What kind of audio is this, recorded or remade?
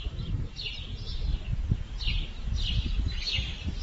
recorded